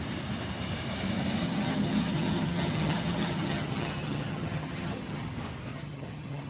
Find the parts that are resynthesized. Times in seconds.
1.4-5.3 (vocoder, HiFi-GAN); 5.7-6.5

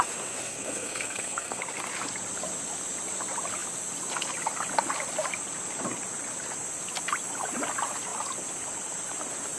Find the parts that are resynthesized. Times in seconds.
0.4-1.6 (codec, SNAC)

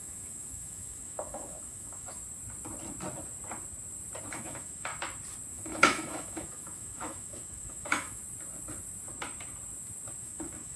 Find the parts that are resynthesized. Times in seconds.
0.0-2.2 (autoencoder, DAC-VAE); 4.3-4.9; 5.5-8.2; 10.2-10.8